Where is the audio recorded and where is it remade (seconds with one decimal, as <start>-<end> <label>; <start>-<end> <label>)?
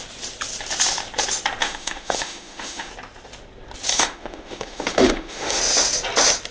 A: 0.0-1.6 recorded; 1.6-2.9 remade; 2.9-3.9 recorded; 3.9-5.6 remade; 5.6-6.5 recorded